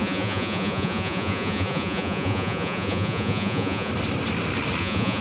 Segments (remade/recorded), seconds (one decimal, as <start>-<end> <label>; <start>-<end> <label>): 0.0-3.9 remade; 3.9-4.8 recorded; 4.8-5.2 remade

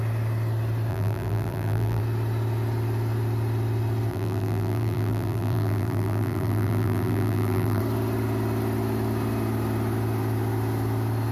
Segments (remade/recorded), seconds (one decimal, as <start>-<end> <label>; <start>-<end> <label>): 0.0-0.9 recorded; 0.9-2.0 remade; 2.0-4.1 recorded; 4.1-7.8 remade; 7.8-11.3 recorded

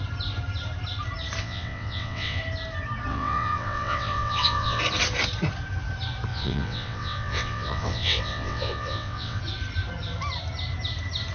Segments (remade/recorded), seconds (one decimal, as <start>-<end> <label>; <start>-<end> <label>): 0.0-1.4 recorded; 1.4-2.4 remade; 2.4-3.1 recorded; 3.1-4.8 remade; 4.8-6.3 recorded; 6.3-9.4 remade; 9.4-11.3 recorded